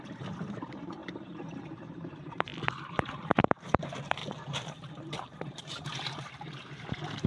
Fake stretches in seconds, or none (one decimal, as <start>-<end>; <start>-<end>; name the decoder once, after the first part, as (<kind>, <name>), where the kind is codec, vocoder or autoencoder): 0.0-2.5 (vocoder, BigVGAN v2); 3.4-4.2; 4.7-7.3